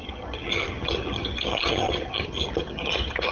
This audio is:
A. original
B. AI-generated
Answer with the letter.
B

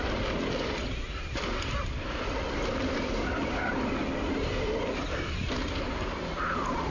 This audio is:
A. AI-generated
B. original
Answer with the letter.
B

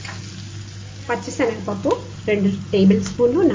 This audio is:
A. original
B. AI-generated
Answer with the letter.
A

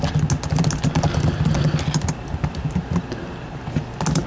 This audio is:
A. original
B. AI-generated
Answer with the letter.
A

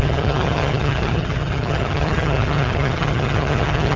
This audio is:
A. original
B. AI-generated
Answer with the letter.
B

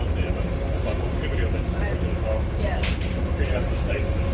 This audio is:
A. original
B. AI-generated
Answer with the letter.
A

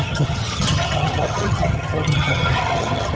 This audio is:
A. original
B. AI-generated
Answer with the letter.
B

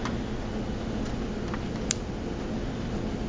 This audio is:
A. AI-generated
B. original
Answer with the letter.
B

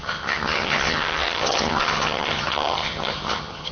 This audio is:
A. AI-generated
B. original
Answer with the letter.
A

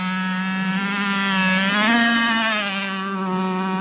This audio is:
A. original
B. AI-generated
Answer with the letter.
A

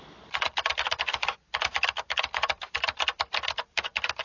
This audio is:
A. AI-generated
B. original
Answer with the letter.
B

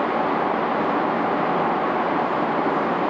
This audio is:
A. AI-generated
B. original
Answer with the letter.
B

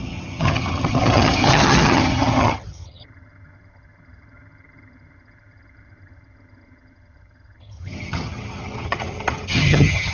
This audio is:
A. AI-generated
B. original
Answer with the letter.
A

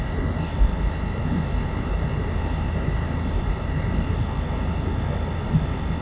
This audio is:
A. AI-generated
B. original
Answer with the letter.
B